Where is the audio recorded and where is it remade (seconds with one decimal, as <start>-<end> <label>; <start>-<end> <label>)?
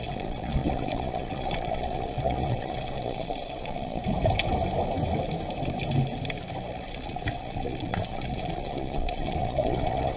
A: 0.0-4.0 remade; 4.0-6.6 recorded; 6.6-10.2 remade